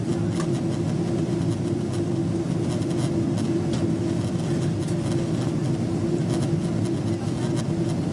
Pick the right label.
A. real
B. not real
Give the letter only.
A